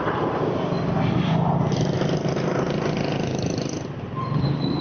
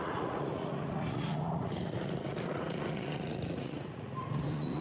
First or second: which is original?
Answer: first